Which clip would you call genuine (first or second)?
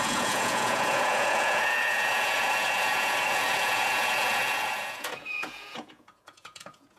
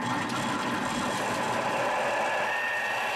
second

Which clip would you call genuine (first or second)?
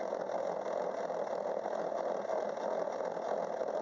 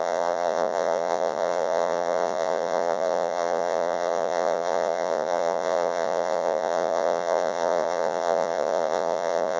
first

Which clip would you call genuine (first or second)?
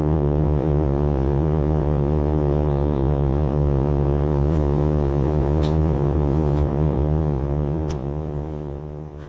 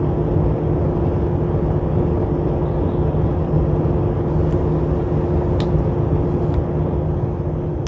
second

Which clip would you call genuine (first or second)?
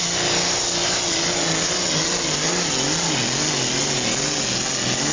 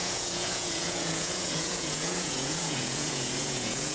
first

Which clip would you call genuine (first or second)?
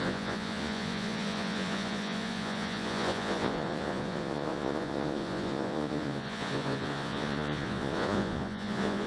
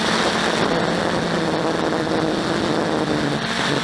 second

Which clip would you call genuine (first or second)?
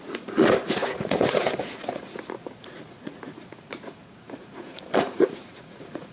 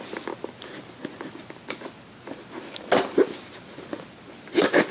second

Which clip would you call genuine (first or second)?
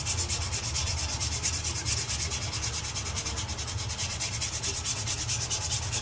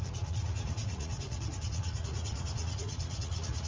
first